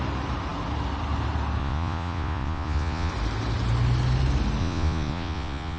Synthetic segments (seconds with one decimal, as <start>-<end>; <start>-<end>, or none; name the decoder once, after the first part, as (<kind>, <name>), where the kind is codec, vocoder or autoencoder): 1.6-3.1 (vocoder, Vocos); 4.6-5.8